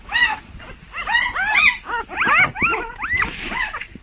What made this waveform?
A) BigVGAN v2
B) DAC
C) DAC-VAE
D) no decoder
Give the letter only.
D